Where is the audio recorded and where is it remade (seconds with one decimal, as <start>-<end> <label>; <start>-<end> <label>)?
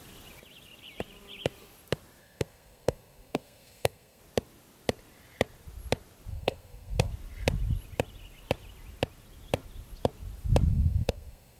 0.0-2.2 recorded; 2.2-4.2 remade; 4.2-6.3 recorded; 6.3-7.1 remade; 7.1-10.7 recorded; 10.7-11.6 remade